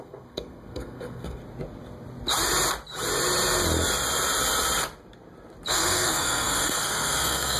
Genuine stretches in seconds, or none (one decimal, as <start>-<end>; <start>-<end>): 1.4-5.7